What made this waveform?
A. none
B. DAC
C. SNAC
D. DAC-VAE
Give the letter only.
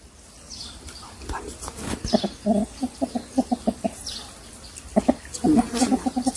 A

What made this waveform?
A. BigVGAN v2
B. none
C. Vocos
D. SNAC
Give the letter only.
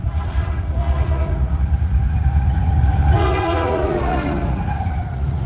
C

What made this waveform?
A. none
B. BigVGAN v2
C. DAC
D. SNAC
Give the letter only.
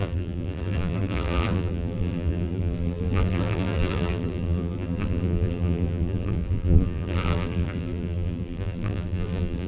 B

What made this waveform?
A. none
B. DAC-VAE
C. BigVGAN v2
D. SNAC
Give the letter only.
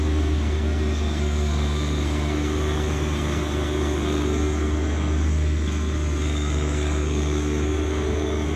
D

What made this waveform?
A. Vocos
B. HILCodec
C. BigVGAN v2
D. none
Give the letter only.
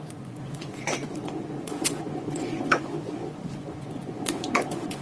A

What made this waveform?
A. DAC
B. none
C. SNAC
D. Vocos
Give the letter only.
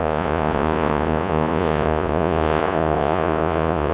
D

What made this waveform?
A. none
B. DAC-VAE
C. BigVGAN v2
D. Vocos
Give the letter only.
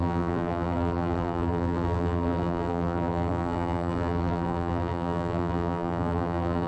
C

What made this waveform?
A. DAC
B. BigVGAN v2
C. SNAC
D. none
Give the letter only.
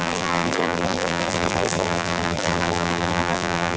B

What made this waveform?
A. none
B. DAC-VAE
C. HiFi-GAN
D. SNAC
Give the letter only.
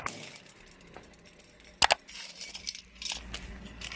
A